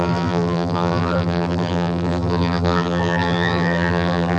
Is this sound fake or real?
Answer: fake